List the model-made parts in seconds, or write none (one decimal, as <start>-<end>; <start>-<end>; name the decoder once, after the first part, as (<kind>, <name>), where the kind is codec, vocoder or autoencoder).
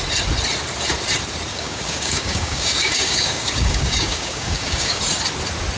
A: 1.5-5.0 (codec, DAC)